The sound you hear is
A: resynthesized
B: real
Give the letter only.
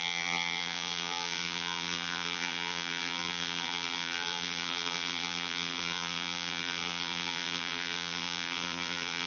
A